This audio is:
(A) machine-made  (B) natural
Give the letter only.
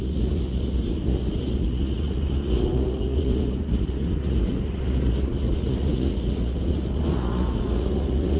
A